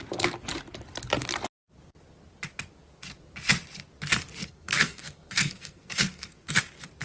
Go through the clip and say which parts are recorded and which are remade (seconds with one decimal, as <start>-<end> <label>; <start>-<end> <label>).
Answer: 0.0-4.4 recorded; 4.4-6.6 remade; 6.6-7.0 recorded